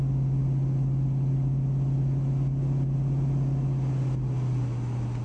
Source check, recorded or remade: recorded